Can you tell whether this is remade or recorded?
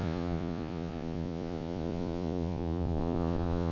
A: remade